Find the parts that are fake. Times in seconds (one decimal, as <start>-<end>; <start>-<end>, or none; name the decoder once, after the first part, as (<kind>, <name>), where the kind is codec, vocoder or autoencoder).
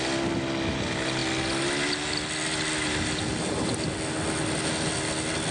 none